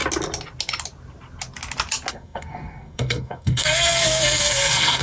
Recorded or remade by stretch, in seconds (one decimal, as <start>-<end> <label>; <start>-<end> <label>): 0.0-2.1 recorded; 2.1-5.0 remade